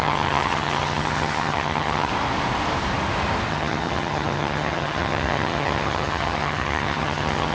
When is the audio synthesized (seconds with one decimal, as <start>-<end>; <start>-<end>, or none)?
0.0-2.1; 3.5-7.5